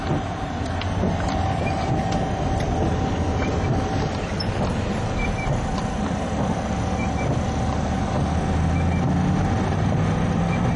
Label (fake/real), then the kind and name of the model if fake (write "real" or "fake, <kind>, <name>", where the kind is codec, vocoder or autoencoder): real